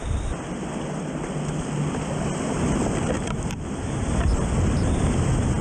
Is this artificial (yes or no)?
no